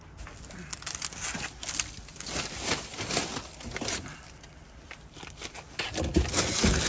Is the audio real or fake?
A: real